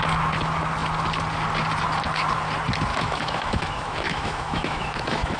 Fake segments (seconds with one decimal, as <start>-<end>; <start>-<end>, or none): 2.9-5.4